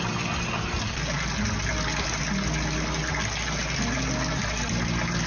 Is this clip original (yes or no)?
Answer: yes